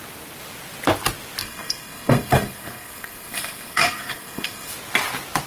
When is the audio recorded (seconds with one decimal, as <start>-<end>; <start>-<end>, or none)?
0.0-1.4; 4.7-5.5